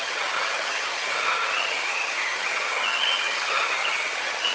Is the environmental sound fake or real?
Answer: fake